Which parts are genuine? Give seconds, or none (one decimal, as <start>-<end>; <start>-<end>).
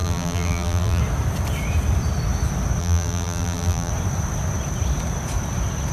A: 1.0-2.8; 3.9-5.9